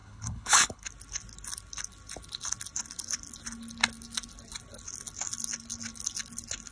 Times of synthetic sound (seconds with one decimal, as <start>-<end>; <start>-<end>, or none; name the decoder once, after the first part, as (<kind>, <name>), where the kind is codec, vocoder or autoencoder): 0.0-0.9 (codec, HILCodec)